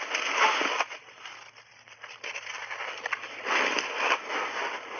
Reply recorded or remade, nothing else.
recorded